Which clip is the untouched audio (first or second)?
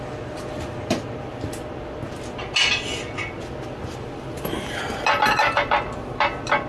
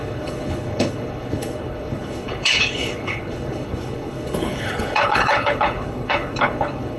first